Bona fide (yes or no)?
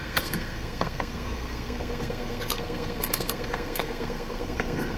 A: no